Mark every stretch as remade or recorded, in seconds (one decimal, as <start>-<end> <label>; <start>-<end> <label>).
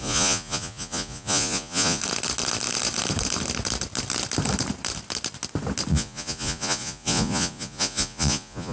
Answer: 0.0-2.0 remade; 2.0-5.9 recorded; 5.9-8.7 remade